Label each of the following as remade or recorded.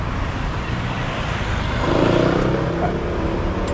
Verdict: remade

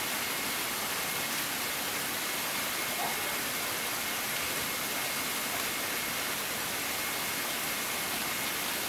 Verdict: recorded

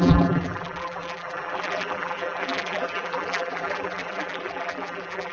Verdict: remade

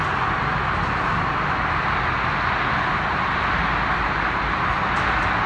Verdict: recorded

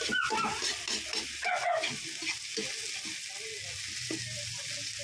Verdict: recorded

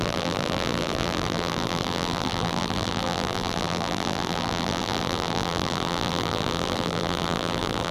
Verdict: remade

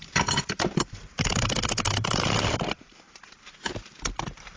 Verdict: remade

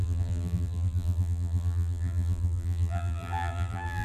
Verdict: remade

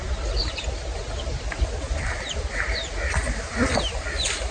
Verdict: recorded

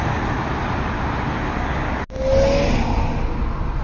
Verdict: recorded